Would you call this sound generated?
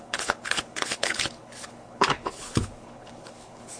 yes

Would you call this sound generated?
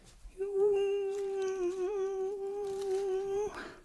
yes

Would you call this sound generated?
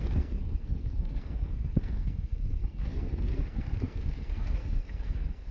yes